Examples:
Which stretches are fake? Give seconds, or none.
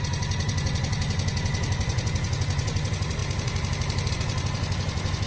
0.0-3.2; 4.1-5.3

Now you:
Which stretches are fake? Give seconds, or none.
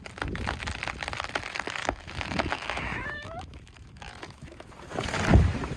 1.8-4.7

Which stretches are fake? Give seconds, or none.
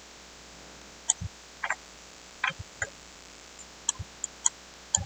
1.8-3.6